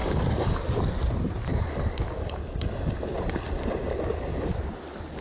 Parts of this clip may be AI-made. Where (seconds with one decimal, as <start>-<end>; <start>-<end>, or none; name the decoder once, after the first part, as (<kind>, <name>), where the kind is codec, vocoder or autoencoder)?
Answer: 0.0-0.6 (codec, DAC); 1.5-2.4